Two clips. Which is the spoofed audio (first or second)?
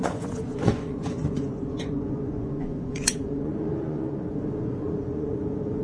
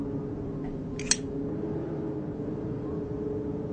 first